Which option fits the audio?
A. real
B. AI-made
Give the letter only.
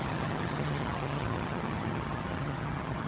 B